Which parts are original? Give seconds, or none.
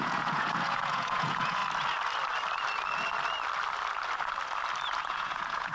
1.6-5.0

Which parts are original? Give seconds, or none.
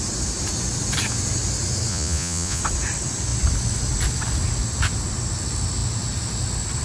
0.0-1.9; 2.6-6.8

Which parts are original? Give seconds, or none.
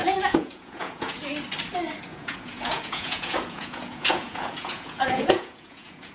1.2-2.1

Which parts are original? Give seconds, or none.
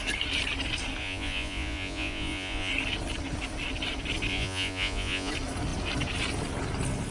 0.0-1.0; 2.7-4.3; 5.3-7.1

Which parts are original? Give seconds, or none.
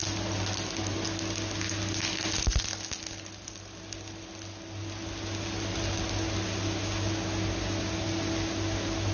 0.0-9.1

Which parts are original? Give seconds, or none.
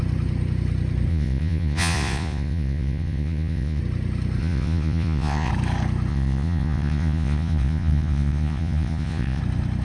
0.0-1.1; 3.8-4.4; 5.5-6.1; 9.4-9.8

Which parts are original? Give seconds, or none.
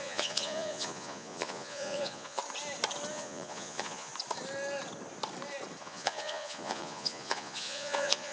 2.4-3.1; 4.1-5.8